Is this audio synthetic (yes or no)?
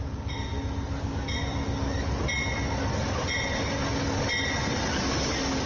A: no